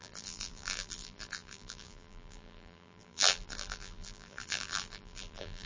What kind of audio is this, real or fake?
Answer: fake